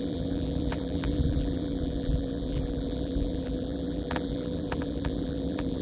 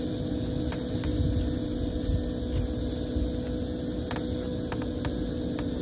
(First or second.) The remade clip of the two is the first